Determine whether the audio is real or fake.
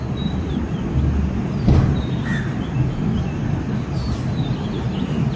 real